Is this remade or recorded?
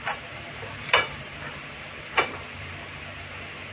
remade